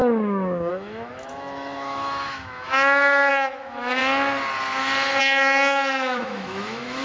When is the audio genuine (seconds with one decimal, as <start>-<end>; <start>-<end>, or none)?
4.0-5.2